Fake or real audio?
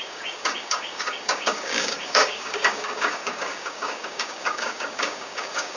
fake